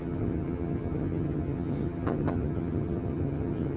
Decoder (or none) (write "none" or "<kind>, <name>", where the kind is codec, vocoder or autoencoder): vocoder, HiFi-GAN